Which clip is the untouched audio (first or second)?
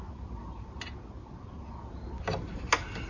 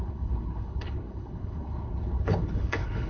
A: first